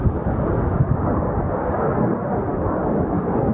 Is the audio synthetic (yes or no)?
no